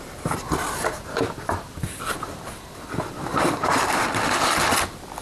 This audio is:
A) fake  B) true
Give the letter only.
B